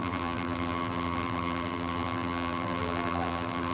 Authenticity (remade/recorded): remade